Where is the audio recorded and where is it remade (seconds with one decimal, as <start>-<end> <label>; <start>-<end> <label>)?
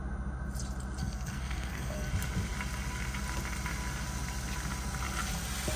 0.0-1.0 recorded; 1.0-2.1 remade; 2.1-5.8 recorded